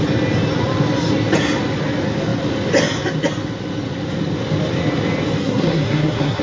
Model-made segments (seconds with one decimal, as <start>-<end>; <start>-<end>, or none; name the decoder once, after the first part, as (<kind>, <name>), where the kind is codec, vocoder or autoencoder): 5.4-6.4 (codec, SNAC)